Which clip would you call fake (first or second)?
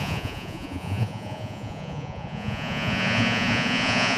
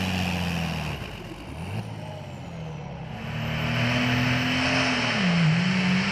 first